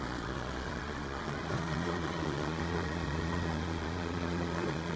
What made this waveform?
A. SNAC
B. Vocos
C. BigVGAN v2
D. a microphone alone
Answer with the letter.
B